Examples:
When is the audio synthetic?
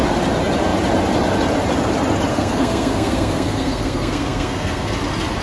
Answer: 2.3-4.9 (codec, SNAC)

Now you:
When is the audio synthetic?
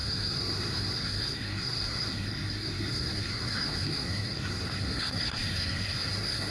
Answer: 0.0-6.5 (codec, SNAC)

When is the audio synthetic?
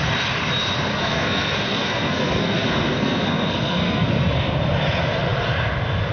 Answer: 0.9-4.5 (codec, SNAC)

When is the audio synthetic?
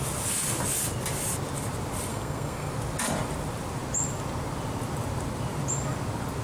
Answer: 2.1-2.7 (codec, SNAC)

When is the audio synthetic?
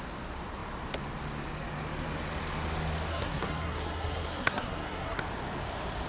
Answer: 3.1-5.2 (codec, SNAC)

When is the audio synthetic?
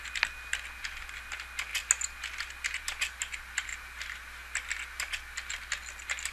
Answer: none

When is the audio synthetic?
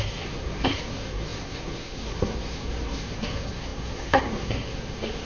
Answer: 0.0-5.2 (codec, SNAC)